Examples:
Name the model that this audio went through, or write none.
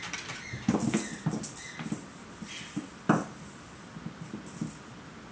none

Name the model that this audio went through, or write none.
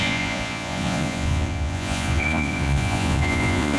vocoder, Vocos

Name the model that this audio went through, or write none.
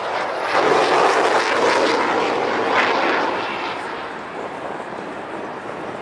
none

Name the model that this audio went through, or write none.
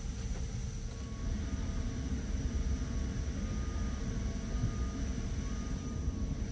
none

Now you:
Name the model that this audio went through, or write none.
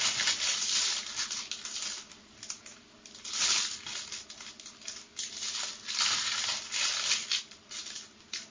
none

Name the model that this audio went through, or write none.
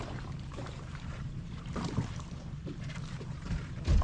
vocoder, BigVGAN v2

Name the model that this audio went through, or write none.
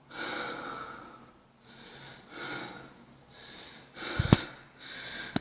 none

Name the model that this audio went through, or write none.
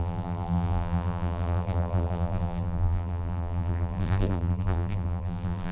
vocoder, BigVGAN v2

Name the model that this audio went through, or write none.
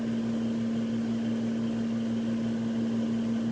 none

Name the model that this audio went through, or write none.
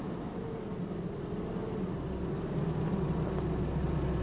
none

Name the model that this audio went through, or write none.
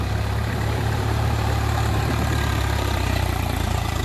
vocoder, BigVGAN v2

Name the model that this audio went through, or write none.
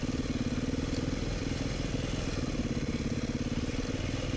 none